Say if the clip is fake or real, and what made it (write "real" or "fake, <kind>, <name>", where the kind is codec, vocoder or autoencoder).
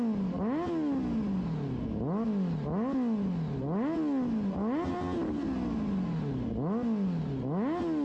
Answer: real